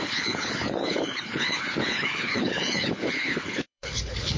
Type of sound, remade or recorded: remade